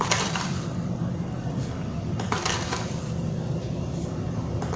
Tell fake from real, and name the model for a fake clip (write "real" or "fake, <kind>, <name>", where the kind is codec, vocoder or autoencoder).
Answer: fake, vocoder, BigVGAN v2